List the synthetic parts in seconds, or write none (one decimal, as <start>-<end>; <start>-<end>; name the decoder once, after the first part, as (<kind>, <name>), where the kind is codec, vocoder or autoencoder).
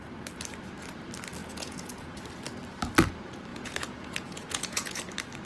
1.4-2.2 (vocoder, Vocos); 3.5-5.0